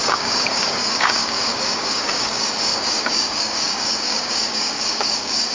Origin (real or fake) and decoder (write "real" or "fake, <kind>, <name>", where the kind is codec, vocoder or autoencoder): fake, codec, DAC